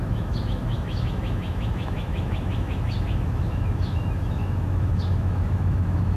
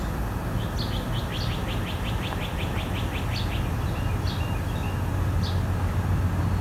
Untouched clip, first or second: second